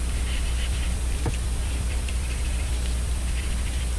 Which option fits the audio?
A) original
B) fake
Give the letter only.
B